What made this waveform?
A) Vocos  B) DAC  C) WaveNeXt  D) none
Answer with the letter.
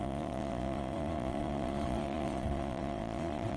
A